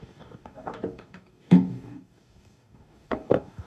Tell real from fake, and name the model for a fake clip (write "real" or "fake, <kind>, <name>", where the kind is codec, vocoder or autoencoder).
fake, codec, DAC